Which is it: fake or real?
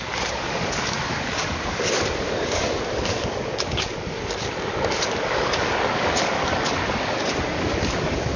fake